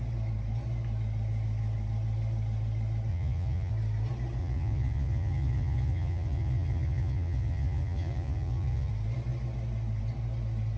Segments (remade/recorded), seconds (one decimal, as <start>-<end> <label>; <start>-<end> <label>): 0.0-3.1 recorded; 3.1-3.7 remade; 3.7-4.4 recorded; 4.4-8.9 remade; 8.9-10.8 recorded